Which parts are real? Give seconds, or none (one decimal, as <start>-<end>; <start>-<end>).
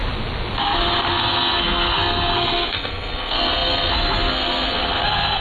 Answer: 0.0-1.1